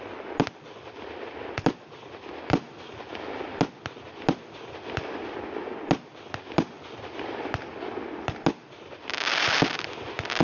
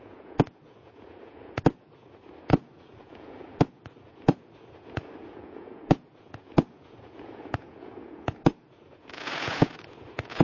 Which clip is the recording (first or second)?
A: first